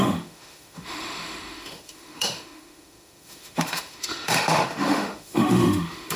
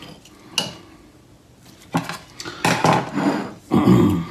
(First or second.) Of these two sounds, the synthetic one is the first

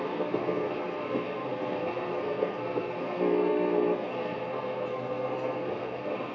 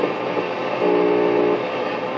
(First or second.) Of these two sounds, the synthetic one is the first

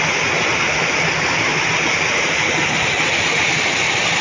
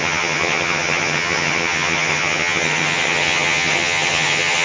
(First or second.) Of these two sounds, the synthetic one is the second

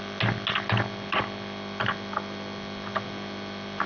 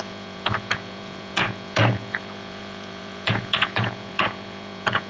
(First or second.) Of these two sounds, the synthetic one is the second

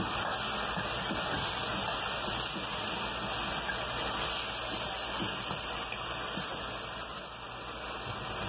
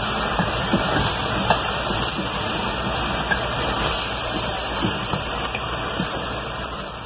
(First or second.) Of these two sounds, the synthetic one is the second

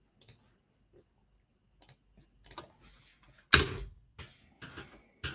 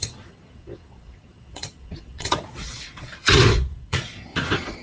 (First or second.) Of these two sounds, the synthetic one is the second